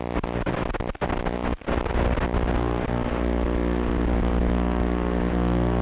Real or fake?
real